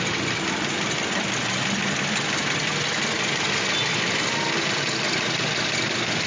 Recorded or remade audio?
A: recorded